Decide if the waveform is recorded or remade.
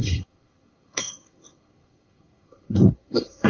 remade